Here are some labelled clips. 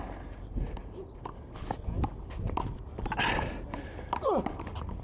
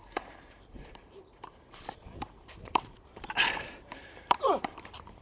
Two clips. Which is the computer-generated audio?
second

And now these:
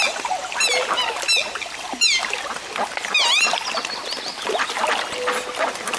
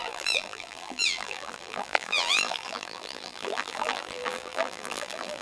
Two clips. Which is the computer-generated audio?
second